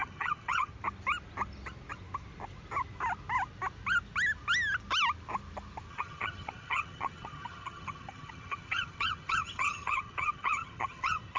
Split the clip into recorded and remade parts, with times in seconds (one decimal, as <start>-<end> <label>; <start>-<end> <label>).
0.0-0.7 remade; 0.7-5.9 recorded; 5.9-11.4 remade